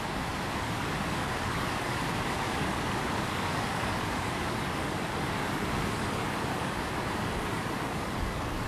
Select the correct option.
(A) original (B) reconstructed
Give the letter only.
B